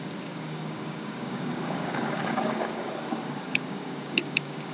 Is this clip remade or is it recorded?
remade